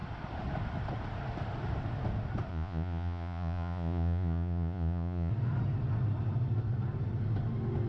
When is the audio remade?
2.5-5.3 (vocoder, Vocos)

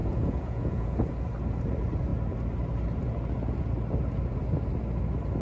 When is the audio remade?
0.0-1.1 (vocoder, Vocos)

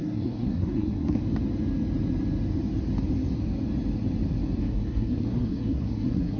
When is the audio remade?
0.0-1.2 (codec, SNAC); 4.6-6.4

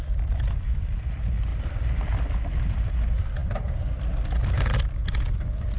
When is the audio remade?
none

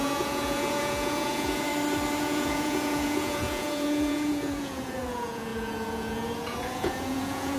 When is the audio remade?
0.0-1.7 (vocoder, Vocos); 2.2-7.6